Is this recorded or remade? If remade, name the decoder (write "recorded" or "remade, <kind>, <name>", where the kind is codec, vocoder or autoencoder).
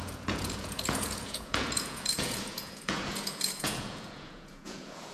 remade, vocoder, Vocos